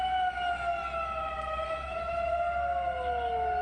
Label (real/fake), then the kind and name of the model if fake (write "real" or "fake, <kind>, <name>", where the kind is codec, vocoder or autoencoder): real